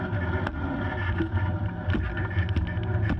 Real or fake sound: real